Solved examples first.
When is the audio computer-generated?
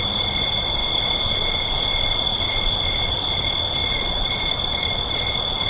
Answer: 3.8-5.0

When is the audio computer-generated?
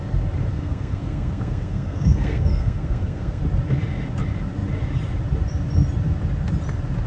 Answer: 0.5-3.4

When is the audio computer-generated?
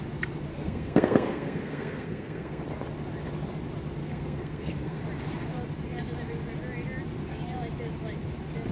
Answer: 0.5-2.6; 4.0-5.0